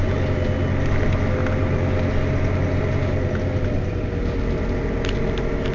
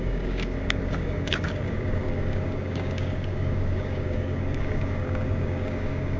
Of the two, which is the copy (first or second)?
second